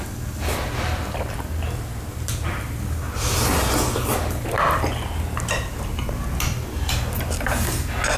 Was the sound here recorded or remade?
recorded